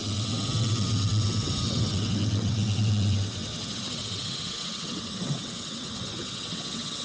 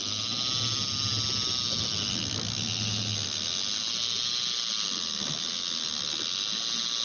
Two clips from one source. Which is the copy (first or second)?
first